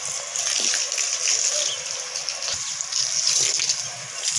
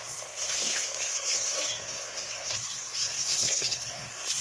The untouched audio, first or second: first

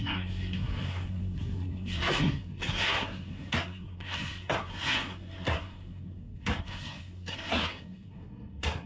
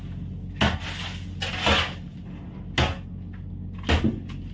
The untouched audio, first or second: second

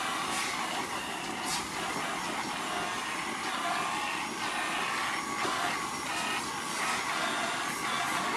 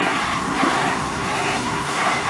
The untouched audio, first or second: first